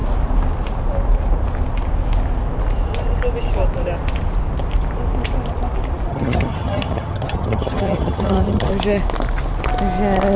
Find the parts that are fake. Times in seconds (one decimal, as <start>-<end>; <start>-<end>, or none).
6.1-8.7